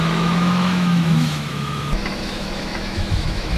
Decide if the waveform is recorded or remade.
remade